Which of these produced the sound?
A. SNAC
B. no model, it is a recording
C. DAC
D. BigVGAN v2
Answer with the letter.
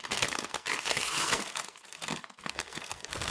A